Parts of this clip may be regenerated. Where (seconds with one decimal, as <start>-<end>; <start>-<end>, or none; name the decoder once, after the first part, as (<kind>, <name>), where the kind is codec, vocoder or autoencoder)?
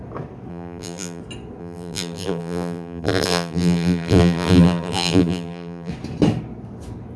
0.5-1.2 (vocoder, BigVGAN v2); 1.6-5.9